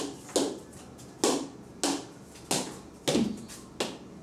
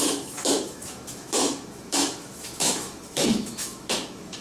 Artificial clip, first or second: second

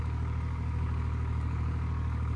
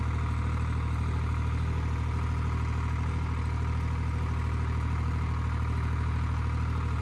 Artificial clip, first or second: first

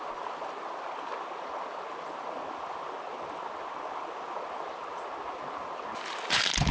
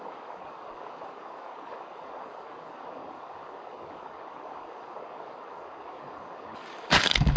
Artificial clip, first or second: second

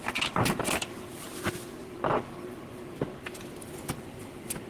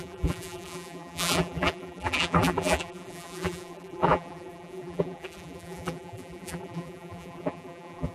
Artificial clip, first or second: second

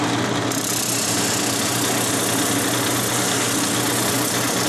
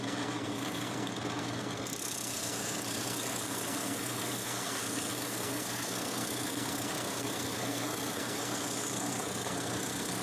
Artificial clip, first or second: second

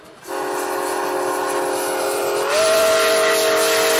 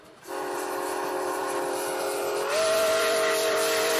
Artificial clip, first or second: second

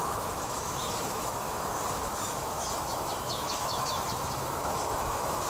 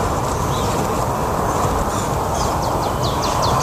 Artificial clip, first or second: first